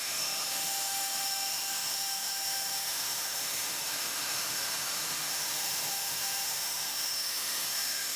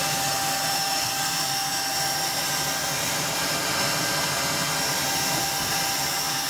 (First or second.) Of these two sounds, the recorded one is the second